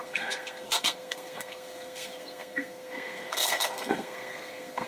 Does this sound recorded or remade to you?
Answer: remade